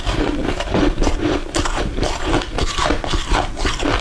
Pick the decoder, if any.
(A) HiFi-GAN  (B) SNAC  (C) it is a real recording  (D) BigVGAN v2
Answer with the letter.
C